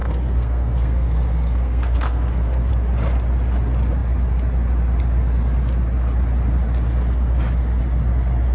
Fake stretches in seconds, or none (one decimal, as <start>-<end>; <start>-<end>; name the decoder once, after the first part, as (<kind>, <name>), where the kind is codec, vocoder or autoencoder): 0.0-2.7 (codec, SNAC)